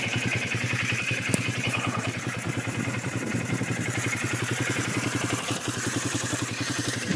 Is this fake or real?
fake